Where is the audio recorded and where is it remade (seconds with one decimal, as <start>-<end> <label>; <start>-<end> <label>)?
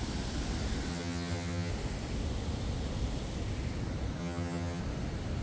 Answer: 0.0-0.9 recorded; 0.9-1.7 remade; 1.7-4.2 recorded; 4.2-4.8 remade; 4.8-5.4 recorded